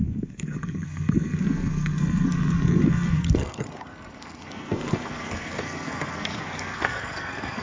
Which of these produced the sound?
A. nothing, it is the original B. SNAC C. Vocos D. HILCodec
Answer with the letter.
B